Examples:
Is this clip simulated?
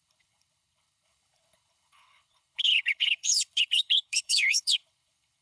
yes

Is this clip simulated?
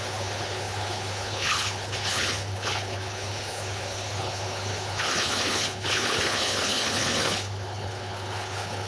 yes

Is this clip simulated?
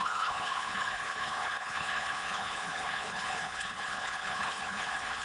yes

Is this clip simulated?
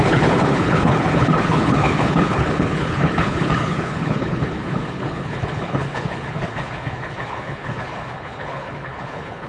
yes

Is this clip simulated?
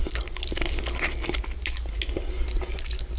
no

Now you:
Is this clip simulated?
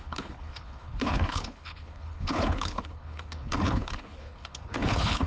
yes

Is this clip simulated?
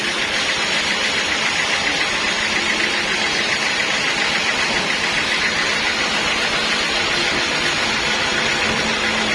no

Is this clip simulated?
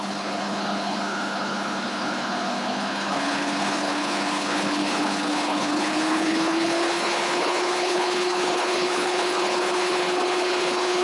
yes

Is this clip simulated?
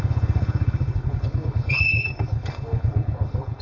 yes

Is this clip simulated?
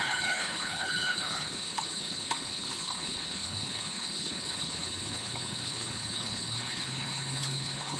yes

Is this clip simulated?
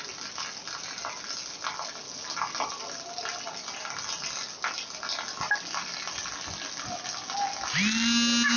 no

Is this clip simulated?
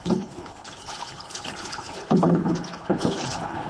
yes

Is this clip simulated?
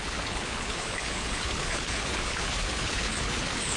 yes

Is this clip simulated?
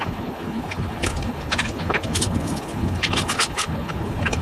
yes